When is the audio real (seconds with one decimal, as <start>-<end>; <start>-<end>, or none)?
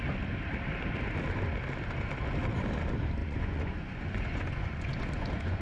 0.0-3.2